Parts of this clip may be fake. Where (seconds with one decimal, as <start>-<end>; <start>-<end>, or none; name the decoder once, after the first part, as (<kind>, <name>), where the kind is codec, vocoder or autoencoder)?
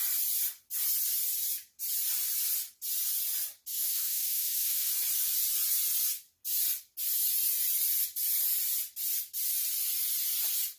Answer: 3.7-4.9 (autoencoder, DAC-VAE)